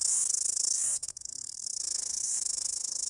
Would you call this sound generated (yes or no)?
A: yes